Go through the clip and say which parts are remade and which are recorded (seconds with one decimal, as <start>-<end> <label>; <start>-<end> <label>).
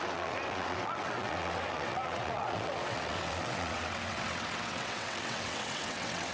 0.0-6.3 remade